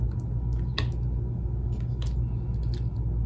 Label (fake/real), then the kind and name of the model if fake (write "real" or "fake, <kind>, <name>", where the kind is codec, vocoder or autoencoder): real